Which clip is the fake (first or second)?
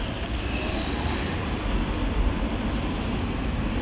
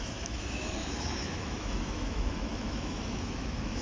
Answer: second